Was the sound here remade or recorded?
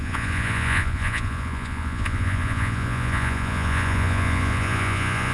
remade